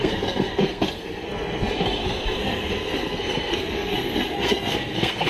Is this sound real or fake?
fake